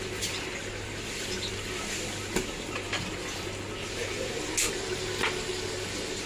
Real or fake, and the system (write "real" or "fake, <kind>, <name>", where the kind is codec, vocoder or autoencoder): real